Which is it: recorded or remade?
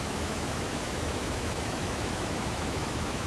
remade